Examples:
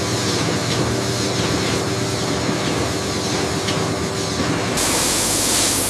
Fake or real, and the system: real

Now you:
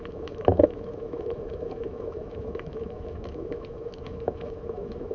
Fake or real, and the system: fake, autoencoder, DAC-VAE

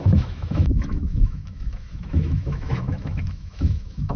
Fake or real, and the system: fake, autoencoder, DAC-VAE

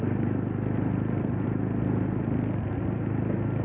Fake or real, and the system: real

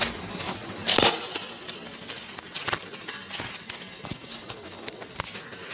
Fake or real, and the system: real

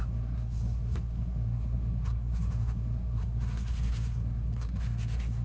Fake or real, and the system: fake, codec, SNAC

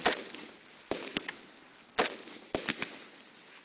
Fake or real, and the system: real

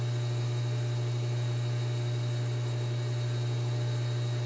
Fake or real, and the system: real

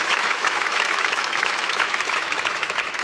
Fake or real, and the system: fake, autoencoder, DAC-VAE